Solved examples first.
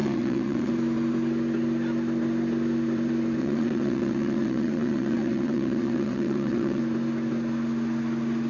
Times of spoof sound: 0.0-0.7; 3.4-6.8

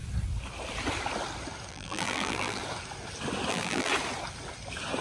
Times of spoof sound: 1.7-2.6; 3.5-3.9

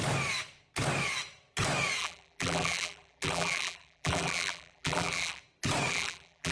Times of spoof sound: 2.0-5.4; 5.9-6.5

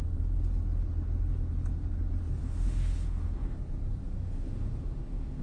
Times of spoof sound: 2.4-3.6; 4.0-5.4

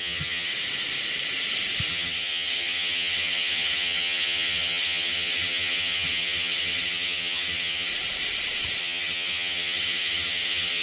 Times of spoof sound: 0.0-0.5; 1.9-7.9; 8.8-10.8

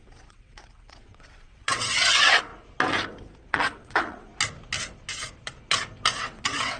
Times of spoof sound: 0.0-2.5; 3.5-4.3; 6.2-6.8

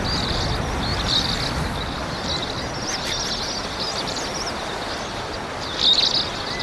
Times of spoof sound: none

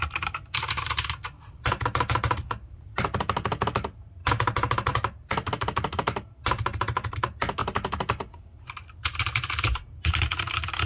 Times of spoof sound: 0.0-4.2; 4.9-7.6; 8.4-10.8